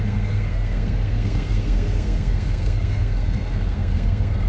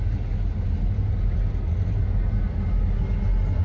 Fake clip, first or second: first